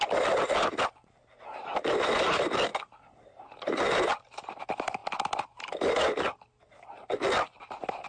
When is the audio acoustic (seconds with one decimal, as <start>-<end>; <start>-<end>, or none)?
0.0-8.1